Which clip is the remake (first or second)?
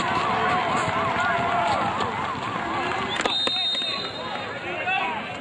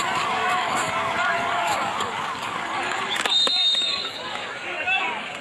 second